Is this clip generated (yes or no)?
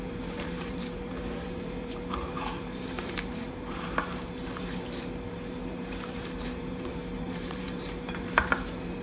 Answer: yes